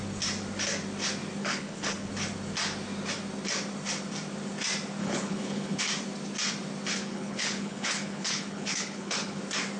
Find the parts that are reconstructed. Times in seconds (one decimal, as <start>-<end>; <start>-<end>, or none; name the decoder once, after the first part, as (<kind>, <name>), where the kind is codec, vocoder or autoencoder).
1.4-2.1 (codec, HILCodec); 5.0-5.8; 7.0-9.4